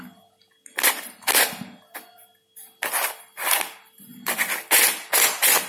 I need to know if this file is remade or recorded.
recorded